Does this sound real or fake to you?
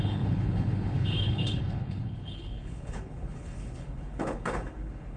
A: fake